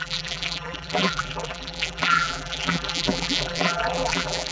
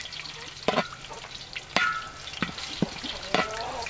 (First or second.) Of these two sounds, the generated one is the first